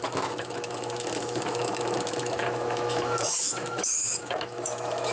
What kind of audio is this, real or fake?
fake